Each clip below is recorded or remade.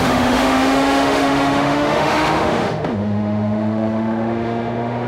remade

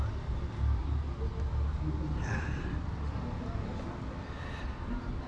recorded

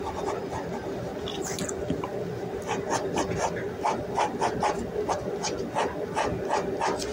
recorded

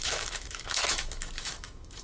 remade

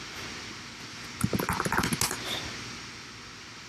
recorded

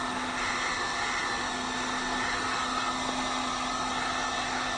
recorded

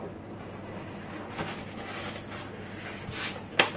recorded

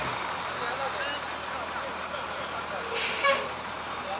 recorded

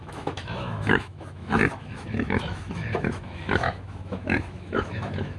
remade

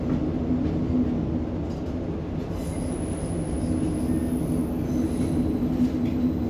recorded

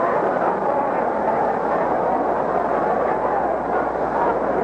recorded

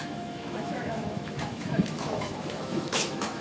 remade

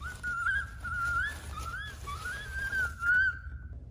recorded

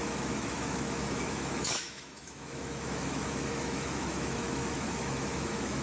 remade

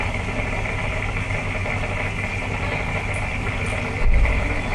recorded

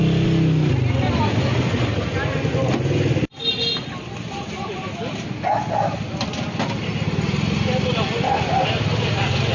recorded